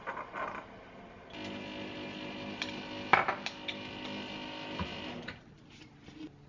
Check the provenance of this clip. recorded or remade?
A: recorded